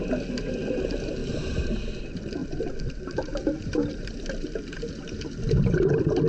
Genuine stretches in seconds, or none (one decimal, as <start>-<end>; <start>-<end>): 0.0-1.2; 1.7-2.4